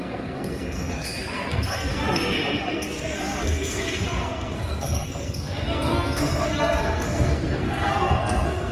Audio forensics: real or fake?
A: fake